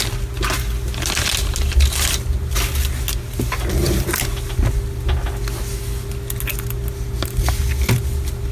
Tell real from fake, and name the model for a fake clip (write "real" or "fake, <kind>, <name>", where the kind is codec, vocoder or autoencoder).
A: real